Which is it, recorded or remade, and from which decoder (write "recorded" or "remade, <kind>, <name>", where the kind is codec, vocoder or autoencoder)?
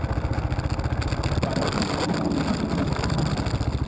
recorded